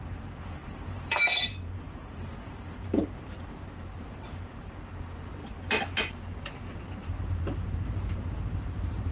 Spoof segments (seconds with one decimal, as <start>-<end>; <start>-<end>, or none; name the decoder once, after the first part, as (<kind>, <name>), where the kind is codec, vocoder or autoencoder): 0.0-5.4 (vocoder, BigVGAN v2); 6.7-9.1